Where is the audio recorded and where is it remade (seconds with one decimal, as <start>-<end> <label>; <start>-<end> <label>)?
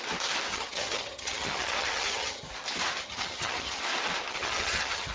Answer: 0.0-0.5 recorded; 0.5-2.5 remade; 2.5-3.0 recorded; 3.0-3.8 remade; 3.8-4.3 recorded; 4.3-5.1 remade